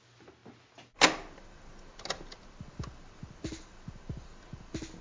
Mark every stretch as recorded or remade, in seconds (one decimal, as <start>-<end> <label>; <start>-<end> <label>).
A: 0.0-5.0 recorded

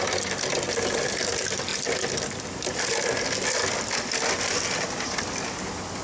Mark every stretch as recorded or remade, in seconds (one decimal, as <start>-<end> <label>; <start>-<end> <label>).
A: 0.0-6.0 recorded

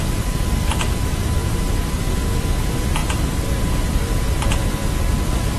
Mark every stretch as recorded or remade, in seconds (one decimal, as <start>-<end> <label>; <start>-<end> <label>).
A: 0.0-1.4 recorded; 1.4-2.1 remade; 2.1-3.0 recorded; 3.0-5.6 remade

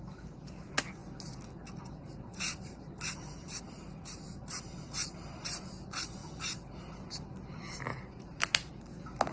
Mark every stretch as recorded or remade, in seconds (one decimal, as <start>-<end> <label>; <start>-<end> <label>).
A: 0.0-2.3 recorded; 2.3-3.7 remade; 3.7-6.2 recorded; 6.2-6.8 remade; 6.8-7.9 recorded; 7.9-8.7 remade; 8.7-9.3 recorded

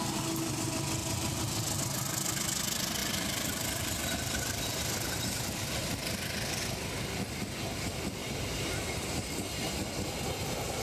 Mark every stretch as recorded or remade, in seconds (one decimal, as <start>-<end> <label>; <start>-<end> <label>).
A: 0.0-1.0 recorded; 1.0-1.8 remade; 1.8-3.0 recorded; 3.0-6.6 remade; 6.6-8.2 recorded; 8.2-9.8 remade; 9.8-10.8 recorded

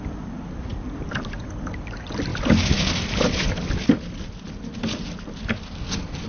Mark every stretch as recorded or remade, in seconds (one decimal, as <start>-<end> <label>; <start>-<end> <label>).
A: 0.0-0.7 recorded; 0.7-1.4 remade; 1.4-6.3 recorded

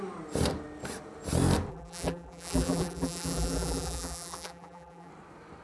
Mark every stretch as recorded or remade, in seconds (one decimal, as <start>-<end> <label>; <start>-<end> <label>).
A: 0.0-1.7 recorded; 1.7-5.1 remade; 5.1-5.6 recorded

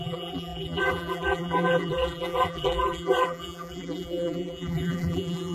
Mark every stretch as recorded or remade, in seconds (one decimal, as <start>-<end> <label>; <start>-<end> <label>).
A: 0.0-5.5 remade